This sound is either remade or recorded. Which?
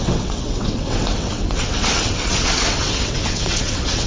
remade